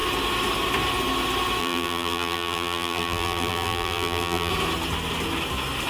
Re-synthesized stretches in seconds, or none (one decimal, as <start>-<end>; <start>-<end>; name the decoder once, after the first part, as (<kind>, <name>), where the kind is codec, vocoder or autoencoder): 1.6-4.5 (vocoder, BigVGAN v2)

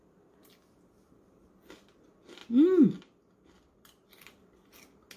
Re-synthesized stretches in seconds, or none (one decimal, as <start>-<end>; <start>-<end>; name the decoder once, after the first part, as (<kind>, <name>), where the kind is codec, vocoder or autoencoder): none

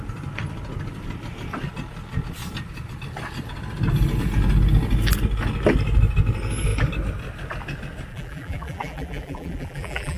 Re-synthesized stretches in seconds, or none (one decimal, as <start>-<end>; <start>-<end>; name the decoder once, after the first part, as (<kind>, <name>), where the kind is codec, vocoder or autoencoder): 8.1-10.2 (vocoder, BigVGAN v2)

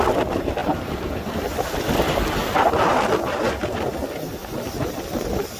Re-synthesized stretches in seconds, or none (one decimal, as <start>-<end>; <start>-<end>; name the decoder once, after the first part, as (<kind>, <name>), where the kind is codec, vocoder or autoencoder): 0.6-1.9 (vocoder, BigVGAN v2); 2.9-3.6; 4.4-5.6

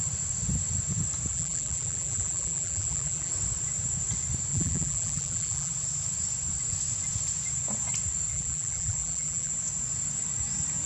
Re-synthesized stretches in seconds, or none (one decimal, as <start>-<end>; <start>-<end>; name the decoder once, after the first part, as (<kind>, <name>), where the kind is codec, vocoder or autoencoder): 1.3-3.3 (vocoder, BigVGAN v2); 4.5-5.7; 8.3-9.5

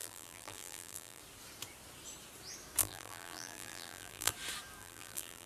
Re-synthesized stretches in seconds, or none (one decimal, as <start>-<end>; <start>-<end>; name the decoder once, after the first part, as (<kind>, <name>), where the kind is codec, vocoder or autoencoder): 0.0-1.2 (vocoder, BigVGAN v2); 2.8-4.3; 4.8-5.5

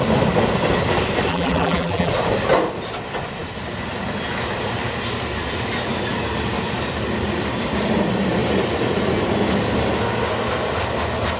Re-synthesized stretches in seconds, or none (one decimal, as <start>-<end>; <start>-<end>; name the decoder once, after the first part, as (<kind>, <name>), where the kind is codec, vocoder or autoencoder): 1.3-2.1 (vocoder, BigVGAN v2)

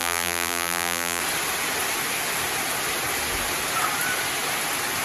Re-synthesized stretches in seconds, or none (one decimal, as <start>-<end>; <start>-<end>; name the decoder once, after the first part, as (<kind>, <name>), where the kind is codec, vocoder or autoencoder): 0.0-1.2 (vocoder, BigVGAN v2)